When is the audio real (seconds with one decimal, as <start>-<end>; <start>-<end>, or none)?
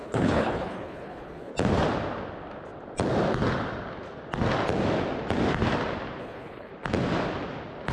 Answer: 1.5-6.2; 6.7-7.9